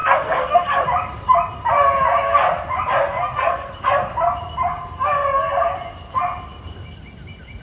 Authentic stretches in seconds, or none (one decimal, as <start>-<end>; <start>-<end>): 0.8-3.0; 3.7-7.6